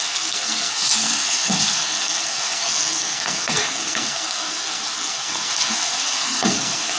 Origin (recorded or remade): remade